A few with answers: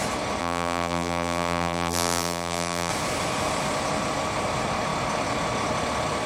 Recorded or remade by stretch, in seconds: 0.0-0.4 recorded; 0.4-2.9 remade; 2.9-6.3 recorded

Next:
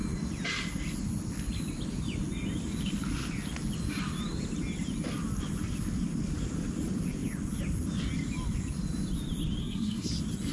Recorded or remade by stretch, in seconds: 0.0-9.6 recorded; 9.6-10.1 remade; 10.1-10.5 recorded

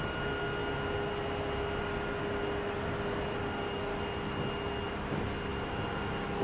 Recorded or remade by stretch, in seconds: 0.0-6.4 recorded

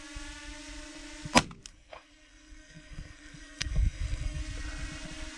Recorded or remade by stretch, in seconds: 0.0-1.7 recorded; 1.7-4.4 remade; 4.4-5.4 recorded

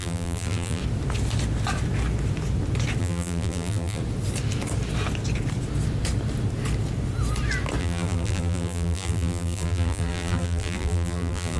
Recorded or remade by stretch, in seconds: 0.0-0.8 remade; 0.8-3.0 recorded; 3.0-4.0 remade; 4.0-7.8 recorded; 7.8-11.6 remade

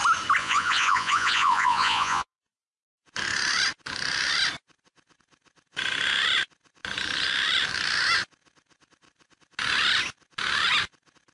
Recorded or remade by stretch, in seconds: 0.0-0.4 recorded; 0.4-2.4 remade; 2.4-11.3 recorded

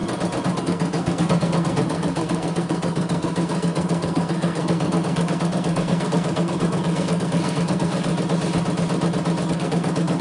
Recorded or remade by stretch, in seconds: 0.0-0.6 recorded; 0.6-8.1 remade; 8.1-9.5 recorded; 9.5-10.2 remade

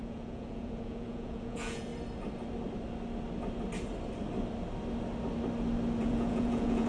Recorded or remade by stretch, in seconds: 0.0-1.9 remade; 1.9-6.0 recorded; 6.0-6.9 remade